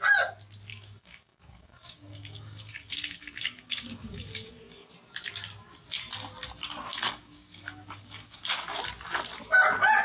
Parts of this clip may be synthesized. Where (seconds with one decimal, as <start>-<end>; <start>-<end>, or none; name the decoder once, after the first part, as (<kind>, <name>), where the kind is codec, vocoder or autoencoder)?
0.7-4.9 (codec, DAC); 6.9-8.4